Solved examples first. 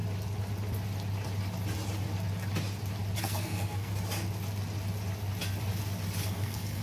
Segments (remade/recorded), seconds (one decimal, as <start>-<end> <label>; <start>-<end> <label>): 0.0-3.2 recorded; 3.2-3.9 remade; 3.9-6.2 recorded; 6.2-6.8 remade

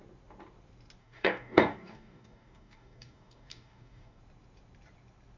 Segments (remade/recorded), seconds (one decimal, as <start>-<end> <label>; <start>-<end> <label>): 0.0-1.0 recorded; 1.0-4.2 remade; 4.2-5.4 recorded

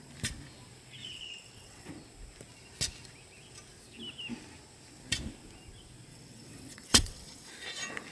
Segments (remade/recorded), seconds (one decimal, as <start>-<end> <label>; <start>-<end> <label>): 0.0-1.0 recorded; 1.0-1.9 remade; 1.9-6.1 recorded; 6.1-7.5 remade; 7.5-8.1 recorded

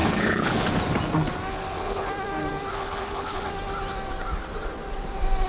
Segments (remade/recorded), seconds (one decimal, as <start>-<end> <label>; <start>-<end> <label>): 0.0-0.7 remade; 0.7-1.5 recorded; 1.5-2.1 remade; 2.1-2.7 recorded; 2.7-3.5 remade; 3.5-5.5 recorded

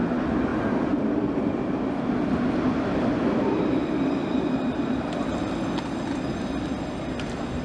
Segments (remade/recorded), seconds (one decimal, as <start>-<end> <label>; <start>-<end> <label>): 0.0-0.5 recorded; 0.5-5.1 remade; 5.1-7.6 recorded

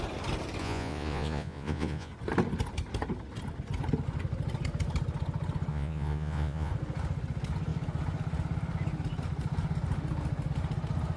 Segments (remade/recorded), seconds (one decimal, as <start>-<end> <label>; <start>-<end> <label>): 0.0-0.6 recorded; 0.6-2.1 remade; 2.1-5.7 recorded; 5.7-6.7 remade; 6.7-11.2 recorded